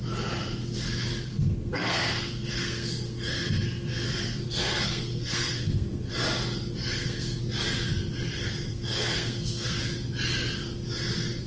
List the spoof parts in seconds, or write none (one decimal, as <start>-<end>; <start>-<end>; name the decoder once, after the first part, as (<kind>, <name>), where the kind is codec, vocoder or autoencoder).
1.3-6.1 (codec, SNAC); 6.8-7.4; 8.7-9.8